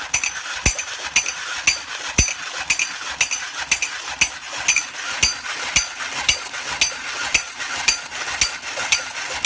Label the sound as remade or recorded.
recorded